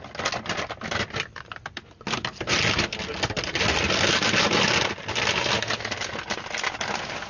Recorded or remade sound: recorded